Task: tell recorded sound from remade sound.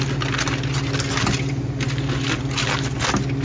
recorded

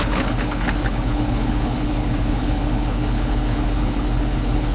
remade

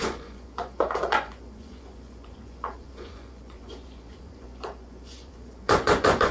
remade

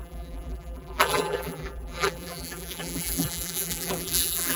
remade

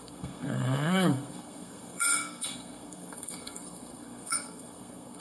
remade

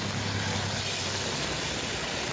recorded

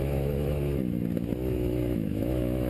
remade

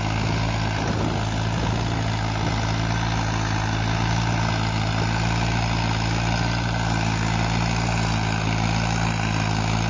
recorded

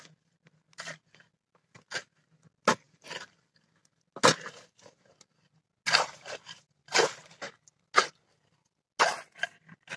recorded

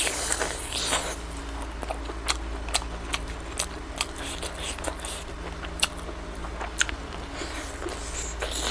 recorded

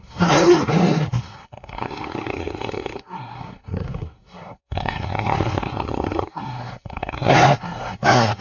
remade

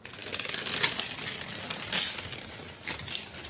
recorded